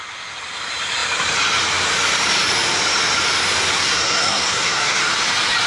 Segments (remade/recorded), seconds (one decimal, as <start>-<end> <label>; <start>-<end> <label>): 0.0-3.7 recorded; 3.7-5.0 remade; 5.0-5.7 recorded